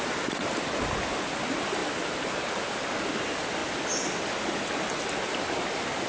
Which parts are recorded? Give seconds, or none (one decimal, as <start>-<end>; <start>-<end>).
0.0-6.1